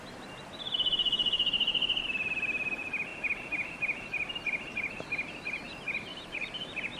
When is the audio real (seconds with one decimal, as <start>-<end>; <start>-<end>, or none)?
0.0-6.1

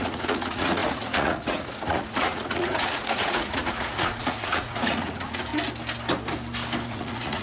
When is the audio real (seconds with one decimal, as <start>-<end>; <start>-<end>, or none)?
5.5-6.9

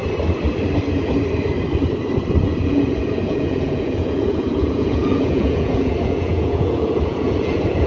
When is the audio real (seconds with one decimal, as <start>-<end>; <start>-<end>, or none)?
0.0-2.4

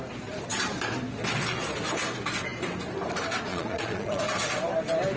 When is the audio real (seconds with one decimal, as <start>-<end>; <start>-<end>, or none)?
0.0-3.5; 4.2-5.2